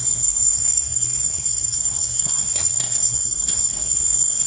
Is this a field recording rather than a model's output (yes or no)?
no